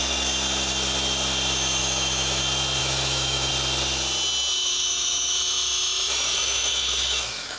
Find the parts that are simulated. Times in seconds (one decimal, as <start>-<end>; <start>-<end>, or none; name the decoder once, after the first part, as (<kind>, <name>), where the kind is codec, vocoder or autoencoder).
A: 1.8-2.4 (autoencoder, DAC-VAE); 2.8-3.5; 4.5-7.6

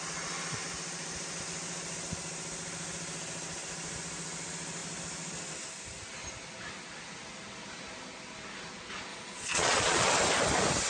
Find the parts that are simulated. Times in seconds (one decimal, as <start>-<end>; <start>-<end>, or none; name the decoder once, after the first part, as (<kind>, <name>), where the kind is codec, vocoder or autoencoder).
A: 9.1-10.1 (vocoder, Vocos)

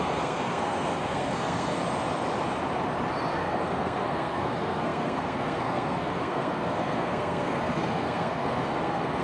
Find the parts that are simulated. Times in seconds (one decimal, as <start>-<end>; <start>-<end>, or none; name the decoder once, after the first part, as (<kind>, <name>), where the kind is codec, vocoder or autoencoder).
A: 0.0-1.8 (codec, SNAC); 3.2-9.2

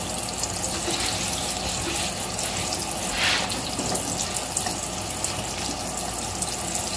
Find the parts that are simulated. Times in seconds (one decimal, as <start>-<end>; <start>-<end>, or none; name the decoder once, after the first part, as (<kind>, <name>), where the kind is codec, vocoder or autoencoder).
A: none

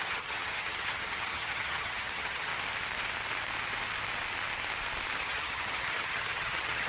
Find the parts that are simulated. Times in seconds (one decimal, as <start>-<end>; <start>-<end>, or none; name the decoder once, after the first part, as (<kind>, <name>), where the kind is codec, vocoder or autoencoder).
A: 0.0-2.5 (vocoder, HiFi-GAN); 5.2-6.9